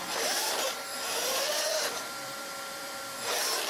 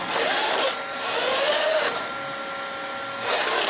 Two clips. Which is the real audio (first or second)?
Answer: second